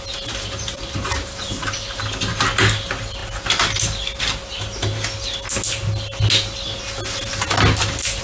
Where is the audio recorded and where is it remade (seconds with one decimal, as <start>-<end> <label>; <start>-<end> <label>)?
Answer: 0.0-8.2 recorded